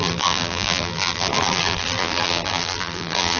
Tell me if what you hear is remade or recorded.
remade